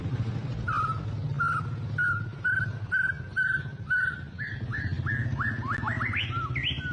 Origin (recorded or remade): recorded